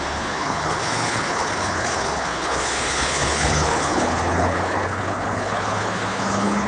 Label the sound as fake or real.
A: fake